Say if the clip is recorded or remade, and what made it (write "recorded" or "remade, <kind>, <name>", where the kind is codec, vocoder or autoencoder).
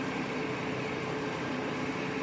remade, vocoder, BigVGAN v2